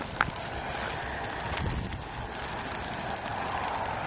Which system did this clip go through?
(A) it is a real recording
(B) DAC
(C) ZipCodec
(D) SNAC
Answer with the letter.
A